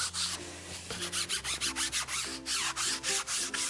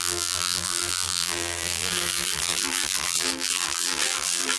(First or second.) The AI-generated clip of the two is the second